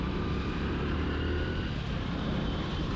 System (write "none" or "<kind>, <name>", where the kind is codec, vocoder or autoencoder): vocoder, BigVGAN v2